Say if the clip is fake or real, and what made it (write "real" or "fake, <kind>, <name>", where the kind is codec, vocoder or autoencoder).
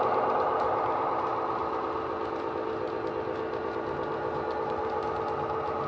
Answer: real